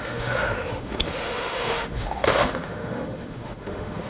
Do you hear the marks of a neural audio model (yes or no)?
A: yes